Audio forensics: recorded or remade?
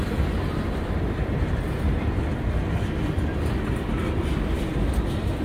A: recorded